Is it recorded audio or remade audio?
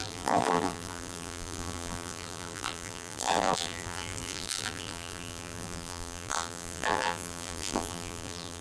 remade